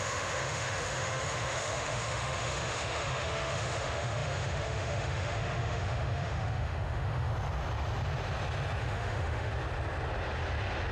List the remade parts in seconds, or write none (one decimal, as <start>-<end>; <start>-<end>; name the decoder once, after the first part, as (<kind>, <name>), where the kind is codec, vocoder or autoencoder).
0.0-7.3 (autoencoder, DAC-VAE); 8.8-9.5